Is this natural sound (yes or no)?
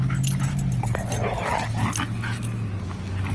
yes